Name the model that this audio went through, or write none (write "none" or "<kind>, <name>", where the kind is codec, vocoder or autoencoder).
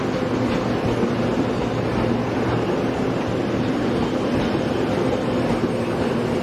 none